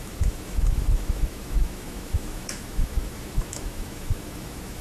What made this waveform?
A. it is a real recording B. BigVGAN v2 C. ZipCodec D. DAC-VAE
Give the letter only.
D